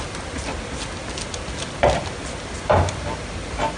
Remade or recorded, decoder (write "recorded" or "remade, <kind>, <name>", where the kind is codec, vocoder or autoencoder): recorded